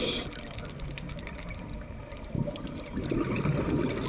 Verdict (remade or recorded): recorded